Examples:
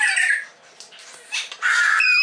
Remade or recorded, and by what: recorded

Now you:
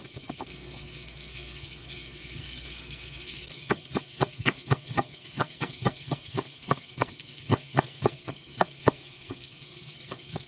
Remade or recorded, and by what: remade, codec, SNAC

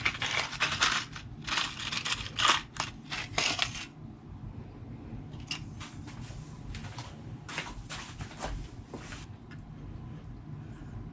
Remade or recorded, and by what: recorded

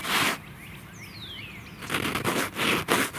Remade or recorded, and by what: recorded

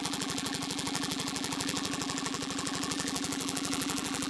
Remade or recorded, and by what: remade, vocoder, BigVGAN v2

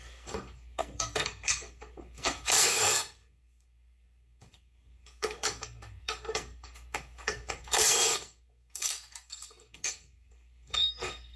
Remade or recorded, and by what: remade, codec, SNAC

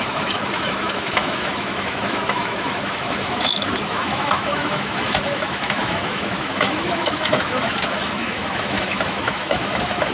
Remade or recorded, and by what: remade, autoencoder, DAC-VAE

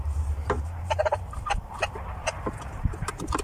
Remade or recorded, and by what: remade, vocoder, BigVGAN v2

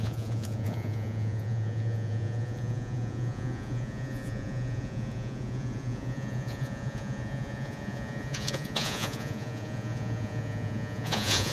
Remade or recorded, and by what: remade, vocoder, Vocos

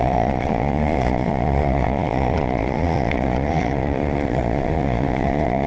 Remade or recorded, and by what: remade, vocoder, Vocos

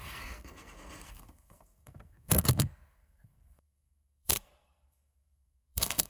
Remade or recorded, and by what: remade, codec, SNAC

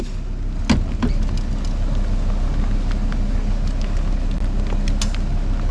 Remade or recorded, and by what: recorded